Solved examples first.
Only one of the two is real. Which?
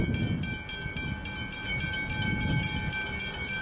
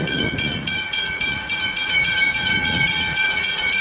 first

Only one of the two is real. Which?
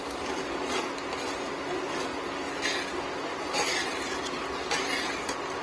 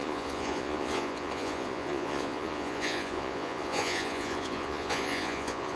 first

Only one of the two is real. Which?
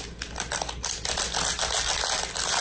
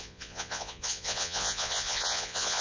first